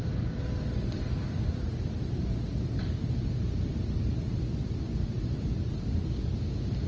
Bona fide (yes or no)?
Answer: yes